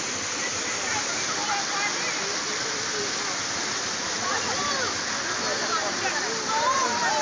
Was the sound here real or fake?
real